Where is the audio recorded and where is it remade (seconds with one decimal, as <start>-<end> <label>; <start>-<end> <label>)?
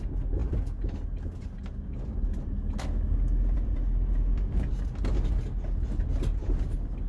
0.0-0.4 recorded; 0.4-4.7 remade; 4.7-6.4 recorded; 6.4-7.1 remade